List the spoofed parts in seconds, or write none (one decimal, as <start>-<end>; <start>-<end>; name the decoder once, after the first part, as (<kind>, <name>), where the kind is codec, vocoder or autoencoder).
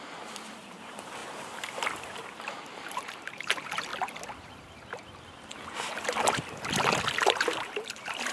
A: 0.0-3.9 (vocoder, BigVGAN v2); 7.6-8.3